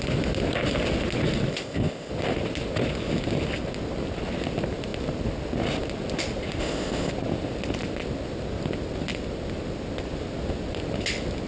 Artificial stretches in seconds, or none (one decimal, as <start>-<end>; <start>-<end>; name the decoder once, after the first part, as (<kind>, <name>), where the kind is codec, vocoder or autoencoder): 1.5-2.1 (codec, ZipCodec); 6.6-7.1